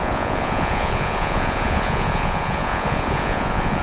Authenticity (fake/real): fake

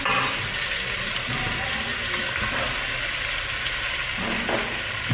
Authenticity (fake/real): real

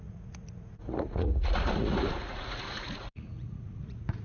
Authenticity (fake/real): fake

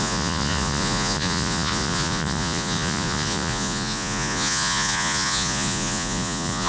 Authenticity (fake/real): fake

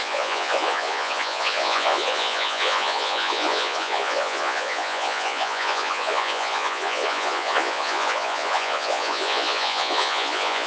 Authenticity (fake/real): fake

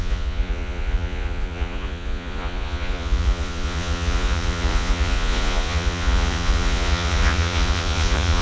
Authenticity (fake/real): fake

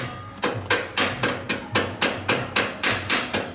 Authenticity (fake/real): real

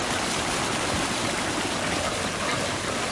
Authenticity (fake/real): real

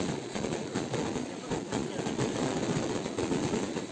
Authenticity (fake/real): fake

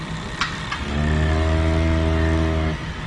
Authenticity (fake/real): real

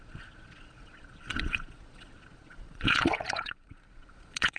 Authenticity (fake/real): fake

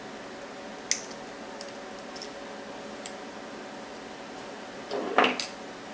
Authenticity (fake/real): real